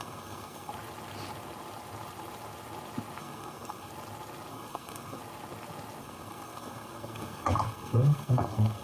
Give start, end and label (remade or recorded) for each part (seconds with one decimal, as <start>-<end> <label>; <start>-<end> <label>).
0.0-0.7 remade; 0.7-3.2 recorded; 3.2-3.9 remade; 3.9-4.5 recorded; 4.5-5.2 remade; 5.2-6.0 recorded; 6.0-8.8 remade